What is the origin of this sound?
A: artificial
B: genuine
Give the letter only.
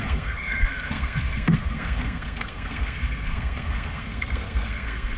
A